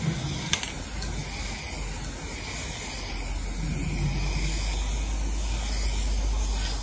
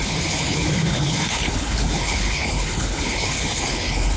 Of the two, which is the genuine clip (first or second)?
first